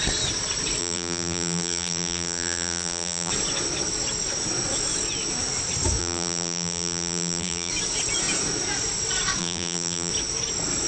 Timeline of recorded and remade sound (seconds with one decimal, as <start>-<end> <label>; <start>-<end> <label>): 0.0-0.8 recorded; 0.8-3.3 remade; 3.3-6.0 recorded; 6.0-7.7 remade; 7.7-9.4 recorded; 9.4-10.1 remade; 10.1-10.9 recorded